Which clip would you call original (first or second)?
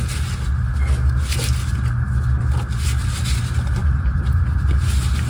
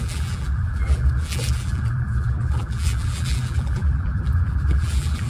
first